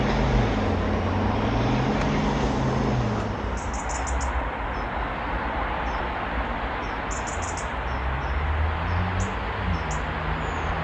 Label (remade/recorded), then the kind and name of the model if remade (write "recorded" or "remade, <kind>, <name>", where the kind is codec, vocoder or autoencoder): recorded